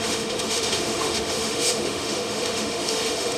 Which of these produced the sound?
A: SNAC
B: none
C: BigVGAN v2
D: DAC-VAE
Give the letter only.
D